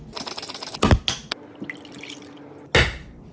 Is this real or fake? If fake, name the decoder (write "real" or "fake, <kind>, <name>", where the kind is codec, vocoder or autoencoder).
real